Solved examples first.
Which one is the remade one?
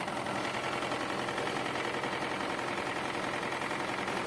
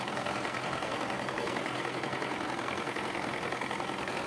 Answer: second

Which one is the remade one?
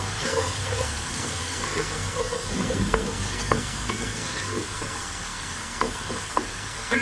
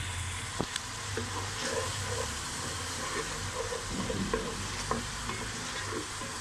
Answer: first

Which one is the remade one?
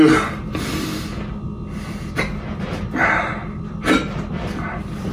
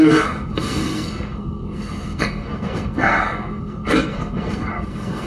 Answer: second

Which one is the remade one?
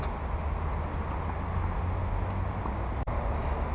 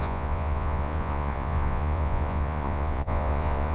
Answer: second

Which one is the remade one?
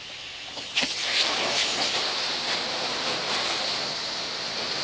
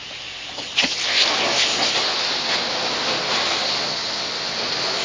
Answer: first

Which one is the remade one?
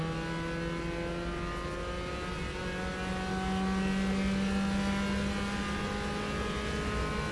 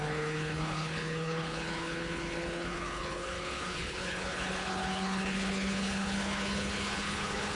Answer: second